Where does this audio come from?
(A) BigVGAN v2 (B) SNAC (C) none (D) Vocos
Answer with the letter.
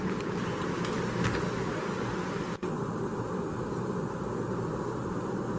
C